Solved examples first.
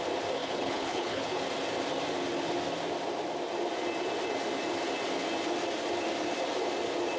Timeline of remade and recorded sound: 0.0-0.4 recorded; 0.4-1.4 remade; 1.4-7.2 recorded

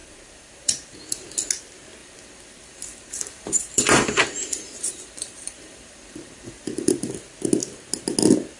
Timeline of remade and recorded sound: 0.0-1.0 remade; 1.0-2.0 recorded; 2.0-7.1 remade; 7.1-8.6 recorded